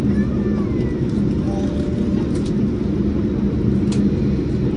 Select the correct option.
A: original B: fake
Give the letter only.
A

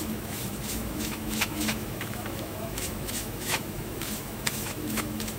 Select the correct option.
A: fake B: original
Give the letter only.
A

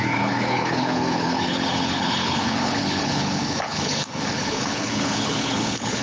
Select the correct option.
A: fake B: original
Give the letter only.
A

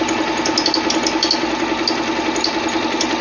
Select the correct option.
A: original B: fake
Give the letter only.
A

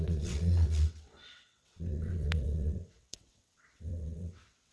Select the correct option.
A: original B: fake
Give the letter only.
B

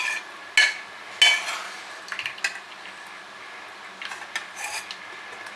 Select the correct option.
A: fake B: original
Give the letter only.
B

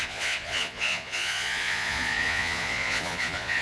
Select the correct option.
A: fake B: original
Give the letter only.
A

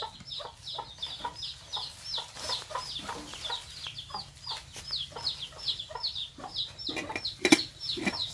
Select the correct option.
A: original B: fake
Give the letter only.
A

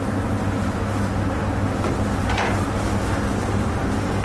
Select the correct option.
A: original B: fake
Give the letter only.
A